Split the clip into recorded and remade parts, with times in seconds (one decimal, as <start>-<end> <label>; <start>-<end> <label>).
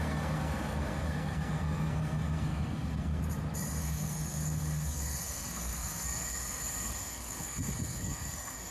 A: 0.0-3.2 remade; 3.2-3.8 recorded; 3.8-8.7 remade